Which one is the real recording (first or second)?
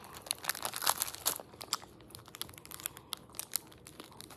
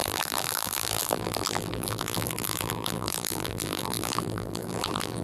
first